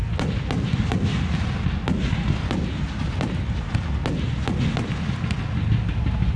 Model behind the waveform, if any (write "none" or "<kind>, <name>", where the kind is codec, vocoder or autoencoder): none